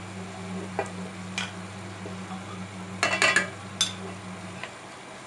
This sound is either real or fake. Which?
real